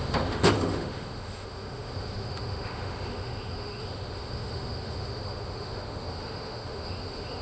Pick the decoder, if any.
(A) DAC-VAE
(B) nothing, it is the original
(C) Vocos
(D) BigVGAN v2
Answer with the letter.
A